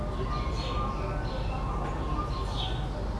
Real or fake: real